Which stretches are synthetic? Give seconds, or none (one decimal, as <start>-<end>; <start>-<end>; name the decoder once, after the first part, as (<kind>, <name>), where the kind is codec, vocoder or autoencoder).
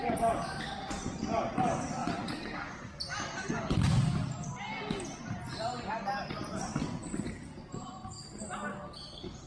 none